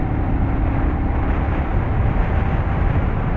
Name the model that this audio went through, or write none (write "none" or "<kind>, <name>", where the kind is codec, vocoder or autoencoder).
none